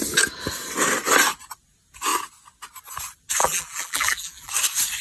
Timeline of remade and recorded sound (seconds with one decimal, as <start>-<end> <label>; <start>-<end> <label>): 0.0-3.4 recorded; 3.4-4.5 remade; 4.5-5.0 recorded